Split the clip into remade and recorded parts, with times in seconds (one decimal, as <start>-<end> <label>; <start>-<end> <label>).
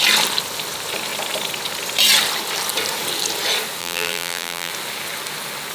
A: 0.0-3.8 recorded; 3.8-4.7 remade; 4.7-5.7 recorded